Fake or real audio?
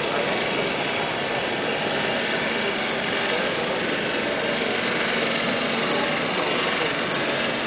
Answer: real